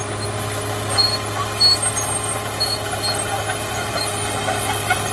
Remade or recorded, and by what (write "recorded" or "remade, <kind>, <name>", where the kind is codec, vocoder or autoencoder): recorded